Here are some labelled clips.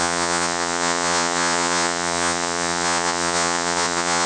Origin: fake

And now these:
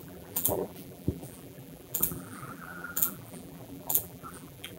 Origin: fake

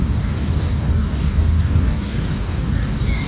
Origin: fake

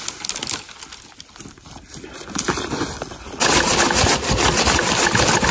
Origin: real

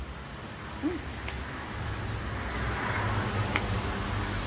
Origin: real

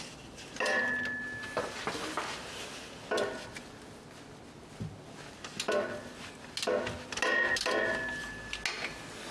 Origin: real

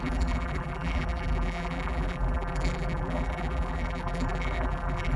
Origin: fake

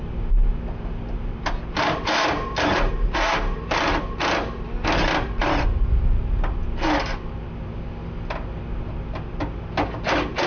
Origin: real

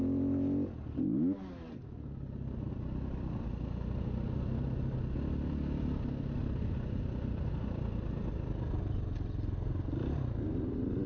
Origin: real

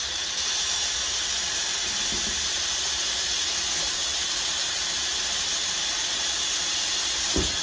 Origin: real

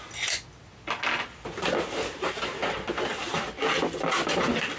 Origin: real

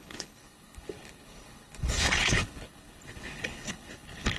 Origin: fake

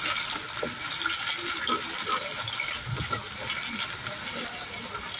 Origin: real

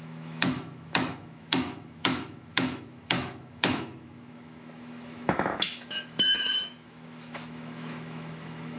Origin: fake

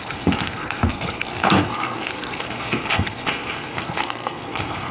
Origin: fake